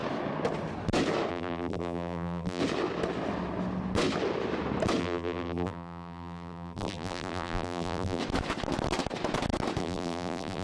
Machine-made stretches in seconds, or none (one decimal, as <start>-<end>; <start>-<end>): 1.3-2.6; 5.0-8.2; 9.8-10.6